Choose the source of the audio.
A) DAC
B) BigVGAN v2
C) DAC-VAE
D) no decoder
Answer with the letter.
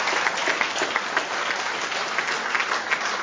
D